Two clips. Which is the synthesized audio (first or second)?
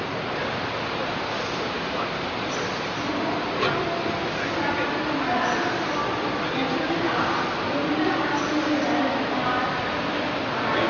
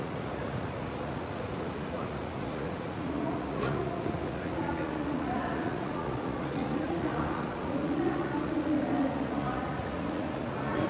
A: second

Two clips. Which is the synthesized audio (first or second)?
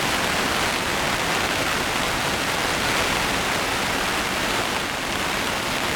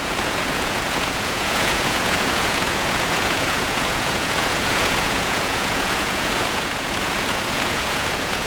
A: second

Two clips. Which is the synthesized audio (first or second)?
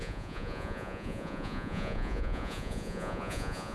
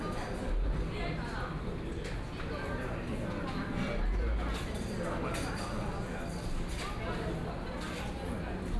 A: first